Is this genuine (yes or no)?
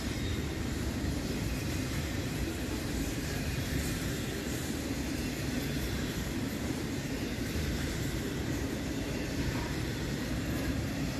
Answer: no